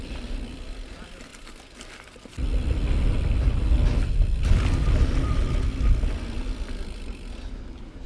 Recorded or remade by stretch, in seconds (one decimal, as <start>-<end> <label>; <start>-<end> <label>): 0.0-8.1 recorded